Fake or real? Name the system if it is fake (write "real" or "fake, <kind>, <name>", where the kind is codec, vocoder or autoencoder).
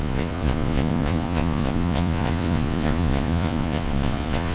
fake, vocoder, Vocos